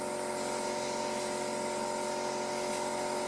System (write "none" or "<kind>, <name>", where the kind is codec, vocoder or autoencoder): none